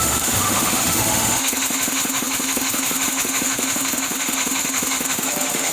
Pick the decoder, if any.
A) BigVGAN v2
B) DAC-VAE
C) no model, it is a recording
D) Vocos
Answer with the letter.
B